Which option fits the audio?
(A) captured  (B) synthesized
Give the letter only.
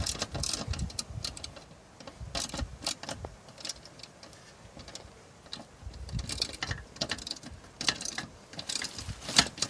A